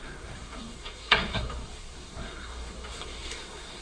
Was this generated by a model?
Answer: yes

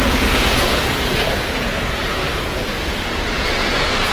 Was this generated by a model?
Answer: yes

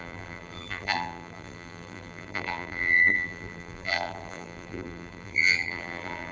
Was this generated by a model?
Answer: yes